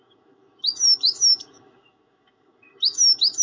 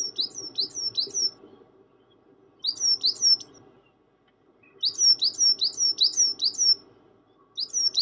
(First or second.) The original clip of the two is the second